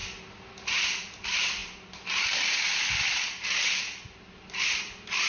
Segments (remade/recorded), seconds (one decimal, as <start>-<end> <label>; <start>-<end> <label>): 0.0-5.3 recorded